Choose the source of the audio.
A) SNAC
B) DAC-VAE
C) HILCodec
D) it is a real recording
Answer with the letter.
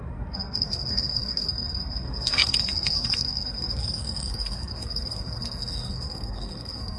A